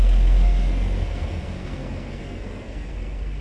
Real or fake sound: fake